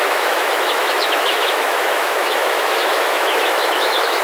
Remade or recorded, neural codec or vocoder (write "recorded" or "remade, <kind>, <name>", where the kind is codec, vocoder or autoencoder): remade, autoencoder, DAC-VAE